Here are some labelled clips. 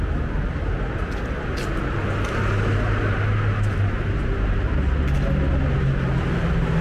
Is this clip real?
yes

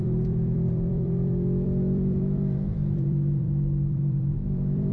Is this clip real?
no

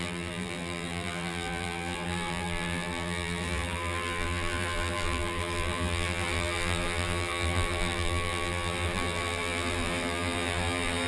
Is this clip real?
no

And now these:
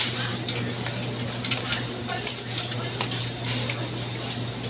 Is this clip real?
yes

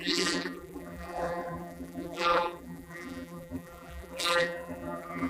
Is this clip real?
no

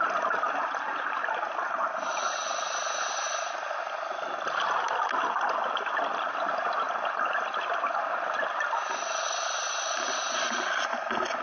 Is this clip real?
yes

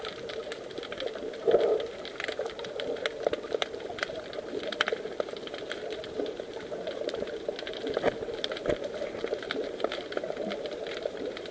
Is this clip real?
no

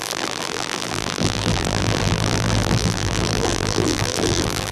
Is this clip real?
no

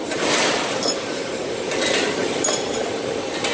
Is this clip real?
no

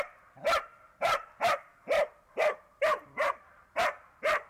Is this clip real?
no